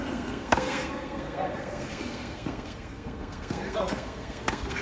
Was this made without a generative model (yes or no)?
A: no